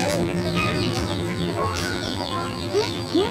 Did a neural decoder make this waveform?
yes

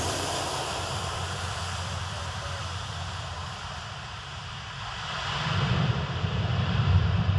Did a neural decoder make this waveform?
yes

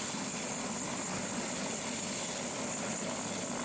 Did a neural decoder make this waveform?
no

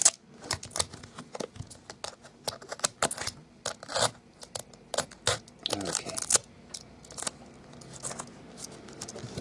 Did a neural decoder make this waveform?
no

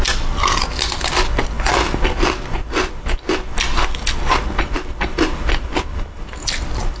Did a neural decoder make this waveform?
no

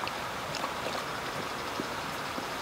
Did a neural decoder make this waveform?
yes